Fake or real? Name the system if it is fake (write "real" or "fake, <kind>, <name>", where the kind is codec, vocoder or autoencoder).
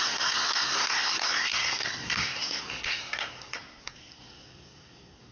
fake, codec, SNAC